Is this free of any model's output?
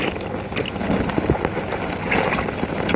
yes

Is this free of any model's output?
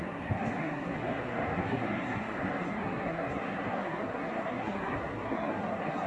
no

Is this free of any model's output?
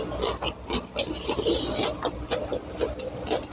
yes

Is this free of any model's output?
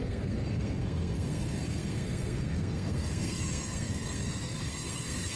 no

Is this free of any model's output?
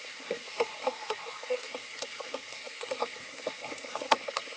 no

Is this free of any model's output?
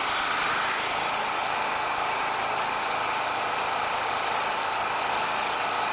yes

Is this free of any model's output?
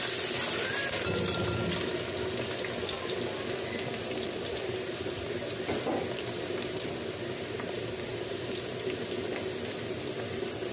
yes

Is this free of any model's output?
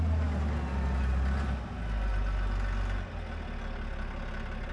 yes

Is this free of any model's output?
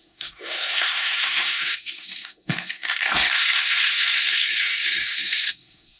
no